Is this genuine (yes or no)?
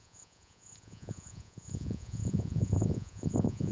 no